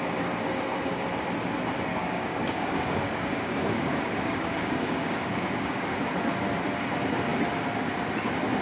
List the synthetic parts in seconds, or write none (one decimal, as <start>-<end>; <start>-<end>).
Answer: 1.9-6.1